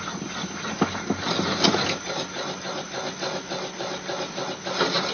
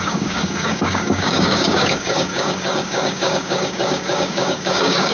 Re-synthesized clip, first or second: second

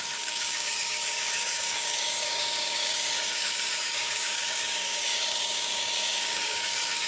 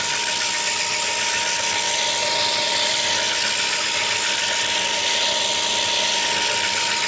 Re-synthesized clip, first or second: first